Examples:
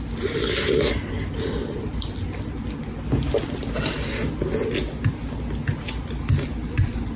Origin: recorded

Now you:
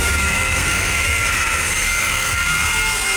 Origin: remade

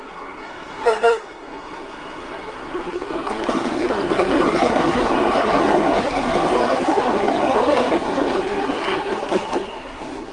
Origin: remade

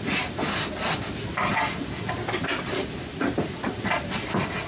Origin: recorded